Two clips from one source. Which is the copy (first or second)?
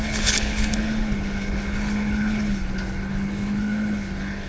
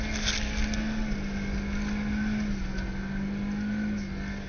first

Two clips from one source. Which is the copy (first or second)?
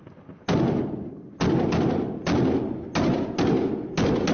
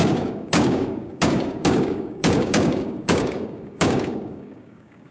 second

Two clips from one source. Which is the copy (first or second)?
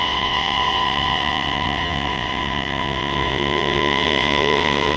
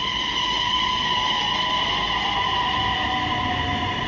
first